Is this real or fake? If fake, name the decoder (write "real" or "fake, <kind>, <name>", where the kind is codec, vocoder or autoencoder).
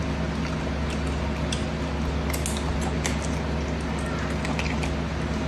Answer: real